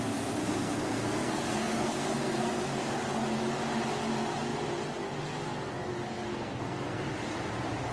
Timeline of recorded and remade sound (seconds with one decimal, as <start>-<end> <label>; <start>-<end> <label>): 0.0-0.4 recorded; 0.4-2.9 remade; 2.9-6.3 recorded; 6.3-7.0 remade; 7.0-7.9 recorded